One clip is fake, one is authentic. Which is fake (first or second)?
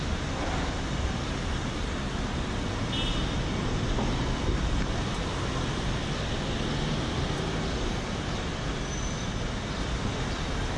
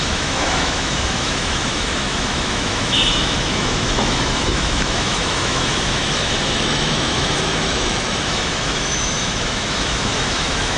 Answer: second